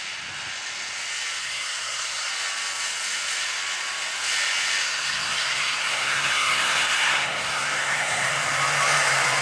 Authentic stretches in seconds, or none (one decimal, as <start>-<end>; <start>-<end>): 0.0-1.4; 2.3-4.8; 8.3-9.4